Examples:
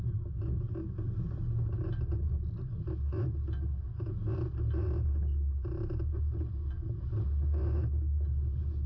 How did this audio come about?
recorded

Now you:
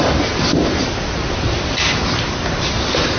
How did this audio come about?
remade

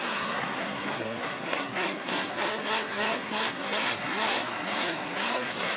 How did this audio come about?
remade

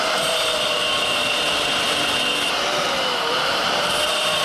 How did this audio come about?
remade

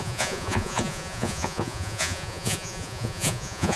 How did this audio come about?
remade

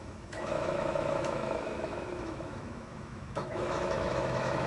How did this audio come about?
remade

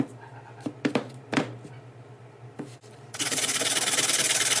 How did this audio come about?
recorded